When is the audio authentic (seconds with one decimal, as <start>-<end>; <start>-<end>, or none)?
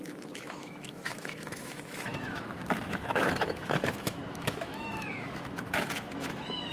none